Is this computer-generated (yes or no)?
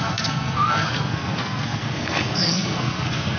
yes